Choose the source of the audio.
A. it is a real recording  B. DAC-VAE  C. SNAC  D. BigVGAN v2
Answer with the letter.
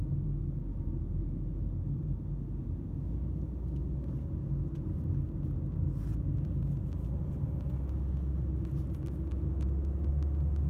A